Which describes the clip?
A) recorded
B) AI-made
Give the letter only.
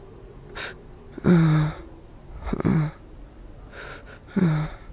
A